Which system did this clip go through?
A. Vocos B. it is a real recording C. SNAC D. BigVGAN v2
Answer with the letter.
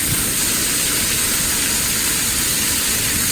B